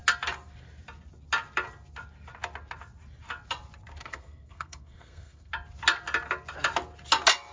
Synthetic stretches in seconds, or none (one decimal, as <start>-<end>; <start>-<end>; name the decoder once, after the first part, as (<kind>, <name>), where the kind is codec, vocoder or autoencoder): 4.0-5.5 (codec, SNAC)